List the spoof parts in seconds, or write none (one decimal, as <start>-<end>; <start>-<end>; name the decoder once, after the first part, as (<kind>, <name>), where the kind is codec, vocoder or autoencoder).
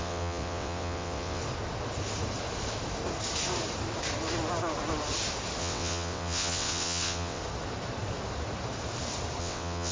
0.0-1.4 (vocoder, WaveNeXt); 5.6-7.4; 9.4-9.9